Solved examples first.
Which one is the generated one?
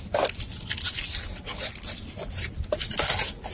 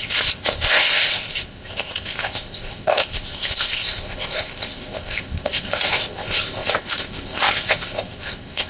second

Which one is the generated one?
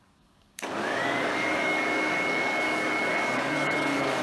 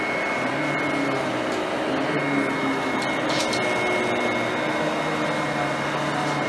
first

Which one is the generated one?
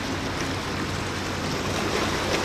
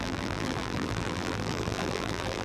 second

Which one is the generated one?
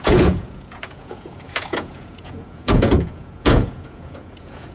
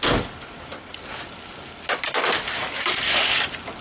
first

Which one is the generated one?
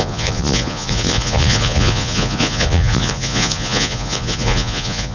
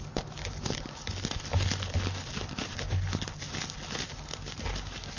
first